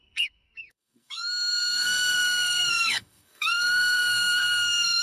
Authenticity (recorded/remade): remade